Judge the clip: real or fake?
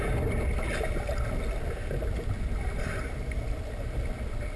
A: real